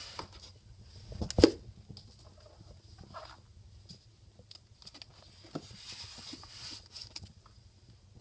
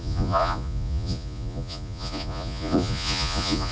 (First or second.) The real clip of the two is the first